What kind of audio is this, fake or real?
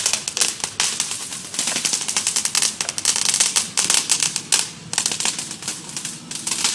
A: real